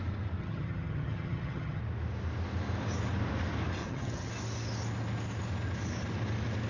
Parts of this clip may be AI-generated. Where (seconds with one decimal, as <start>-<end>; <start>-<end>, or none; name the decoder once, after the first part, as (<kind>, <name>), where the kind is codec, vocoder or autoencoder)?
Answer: 0.4-1.8 (vocoder, HiFi-GAN); 3.8-4.3